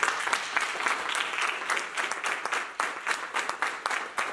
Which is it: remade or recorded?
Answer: recorded